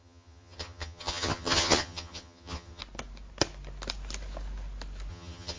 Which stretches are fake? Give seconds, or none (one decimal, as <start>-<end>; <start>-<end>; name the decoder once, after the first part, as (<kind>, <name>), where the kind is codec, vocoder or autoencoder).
0.0-2.8 (vocoder, HiFi-GAN); 5.1-5.6